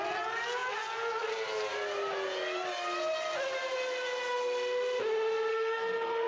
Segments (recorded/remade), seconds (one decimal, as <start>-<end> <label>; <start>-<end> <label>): 0.0-5.5 recorded; 5.5-6.3 remade